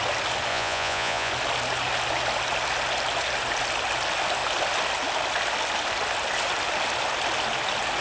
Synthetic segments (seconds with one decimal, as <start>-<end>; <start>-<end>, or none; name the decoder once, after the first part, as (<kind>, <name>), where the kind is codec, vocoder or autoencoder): 0.5-1.3 (vocoder, Vocos)